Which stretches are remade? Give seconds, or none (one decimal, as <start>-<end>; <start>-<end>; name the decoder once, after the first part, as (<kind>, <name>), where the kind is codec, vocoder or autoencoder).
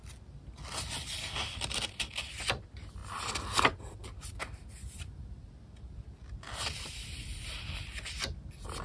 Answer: none